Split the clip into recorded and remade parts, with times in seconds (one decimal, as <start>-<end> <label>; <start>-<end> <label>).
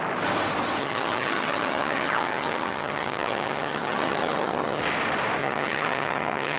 0.0-0.8 recorded; 0.8-4.8 remade; 4.8-5.4 recorded; 5.4-6.6 remade